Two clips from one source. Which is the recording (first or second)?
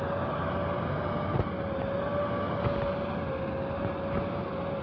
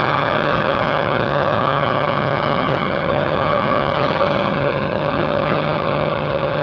first